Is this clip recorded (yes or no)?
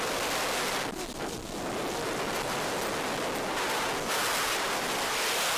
yes